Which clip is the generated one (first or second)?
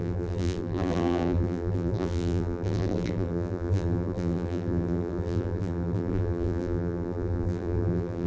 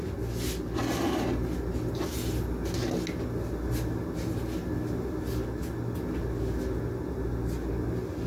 first